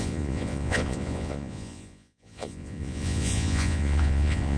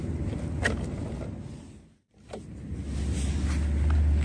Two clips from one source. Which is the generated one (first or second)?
first